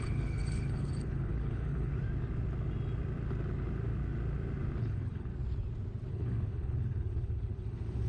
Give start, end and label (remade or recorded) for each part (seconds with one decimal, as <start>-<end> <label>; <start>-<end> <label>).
0.0-1.9 remade; 1.9-4.8 recorded; 4.8-5.3 remade; 5.3-6.1 recorded; 6.1-8.1 remade